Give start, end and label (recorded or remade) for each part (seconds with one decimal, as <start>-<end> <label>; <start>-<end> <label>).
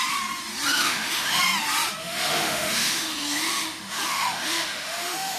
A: 0.0-0.7 recorded; 0.7-1.4 remade; 1.4-2.0 recorded; 2.0-5.4 remade